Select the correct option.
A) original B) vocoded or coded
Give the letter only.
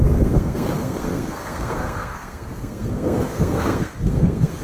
B